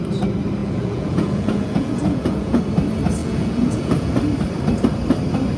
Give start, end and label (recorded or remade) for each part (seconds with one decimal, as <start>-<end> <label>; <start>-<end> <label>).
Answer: 0.0-0.6 recorded; 0.6-2.6 remade; 2.6-3.2 recorded; 3.2-4.1 remade; 4.1-5.6 recorded